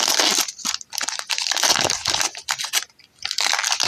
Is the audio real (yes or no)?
yes